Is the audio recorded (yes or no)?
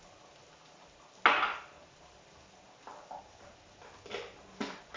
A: yes